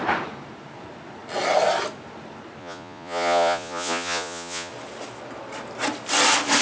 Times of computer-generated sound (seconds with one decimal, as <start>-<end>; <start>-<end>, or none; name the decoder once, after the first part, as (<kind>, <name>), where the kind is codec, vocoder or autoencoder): 2.6-4.7 (vocoder, Vocos)